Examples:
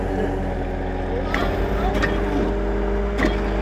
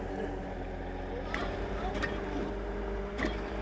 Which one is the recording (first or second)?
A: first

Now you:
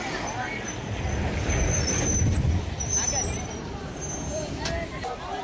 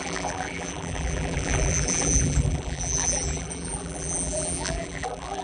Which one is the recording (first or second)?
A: first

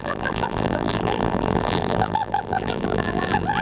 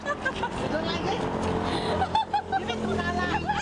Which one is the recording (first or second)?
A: second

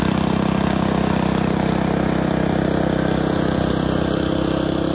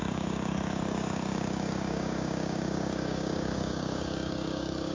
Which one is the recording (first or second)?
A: first